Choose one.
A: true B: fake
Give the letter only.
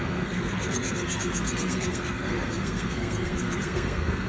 B